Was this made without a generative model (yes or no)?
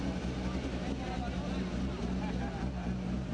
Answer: yes